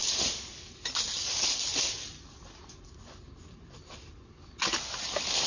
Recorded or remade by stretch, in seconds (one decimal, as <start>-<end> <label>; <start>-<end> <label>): 0.0-5.5 recorded